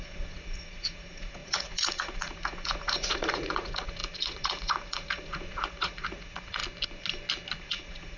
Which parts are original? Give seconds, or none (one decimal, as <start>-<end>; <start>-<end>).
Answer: 6.6-7.6